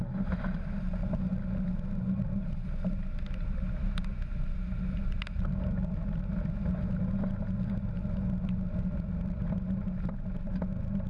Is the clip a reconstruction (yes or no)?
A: no